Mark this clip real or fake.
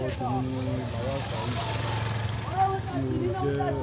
real